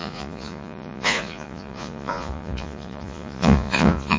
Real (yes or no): no